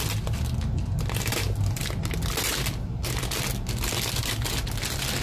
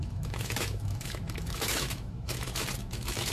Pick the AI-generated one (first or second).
second